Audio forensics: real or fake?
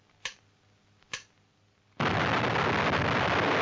real